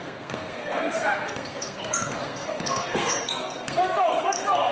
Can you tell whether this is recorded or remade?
remade